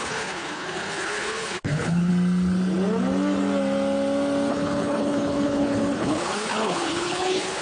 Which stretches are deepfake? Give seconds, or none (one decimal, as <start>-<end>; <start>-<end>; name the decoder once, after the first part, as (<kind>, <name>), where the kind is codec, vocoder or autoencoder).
0.0-2.1 (codec, HILCodec); 4.5-7.6